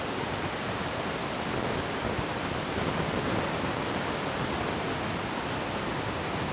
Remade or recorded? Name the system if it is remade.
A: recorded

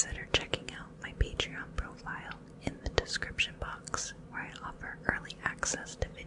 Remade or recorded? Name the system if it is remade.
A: recorded